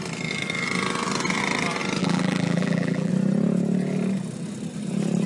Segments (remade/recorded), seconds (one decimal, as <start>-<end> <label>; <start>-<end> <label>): 0.0-2.0 recorded; 2.0-3.1 remade; 3.1-5.3 recorded

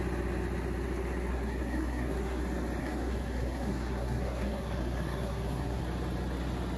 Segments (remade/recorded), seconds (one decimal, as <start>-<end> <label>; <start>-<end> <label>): 0.0-1.3 recorded; 1.3-2.4 remade; 2.4-2.8 recorded; 2.8-5.8 remade; 5.8-6.8 recorded

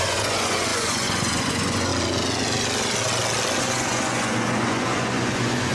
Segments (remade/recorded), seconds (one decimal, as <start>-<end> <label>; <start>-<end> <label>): 0.0-1.9 remade; 1.9-3.6 recorded; 3.6-5.7 remade

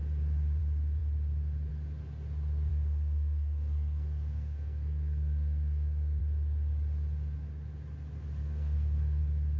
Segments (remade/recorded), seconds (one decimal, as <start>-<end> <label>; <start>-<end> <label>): 0.0-2.7 recorded; 2.7-6.2 remade; 6.2-8.4 recorded; 8.4-9.2 remade; 9.2-9.6 recorded

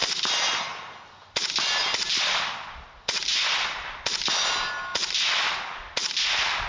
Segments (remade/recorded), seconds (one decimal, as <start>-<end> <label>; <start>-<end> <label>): 0.0-6.7 recorded

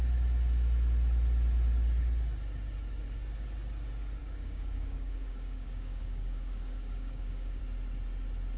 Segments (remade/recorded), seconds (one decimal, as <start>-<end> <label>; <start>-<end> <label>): 0.0-4.2 recorded; 4.2-7.6 remade; 7.6-8.6 recorded

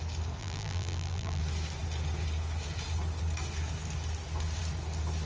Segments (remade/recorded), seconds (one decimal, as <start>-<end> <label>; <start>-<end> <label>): 0.0-0.4 recorded; 0.4-1.4 remade; 1.4-5.3 recorded

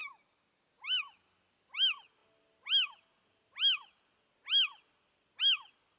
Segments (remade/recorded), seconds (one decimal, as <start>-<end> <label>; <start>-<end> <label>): 0.0-6.0 recorded